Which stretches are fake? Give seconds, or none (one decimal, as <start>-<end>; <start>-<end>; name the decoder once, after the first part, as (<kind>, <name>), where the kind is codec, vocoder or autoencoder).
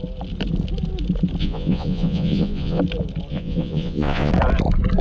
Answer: 1.4-2.8 (vocoder, Vocos); 3.3-4.3